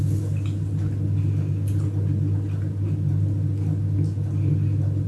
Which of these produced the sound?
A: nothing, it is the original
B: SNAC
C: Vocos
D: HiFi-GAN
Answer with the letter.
A